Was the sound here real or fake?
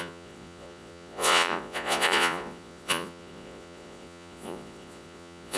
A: fake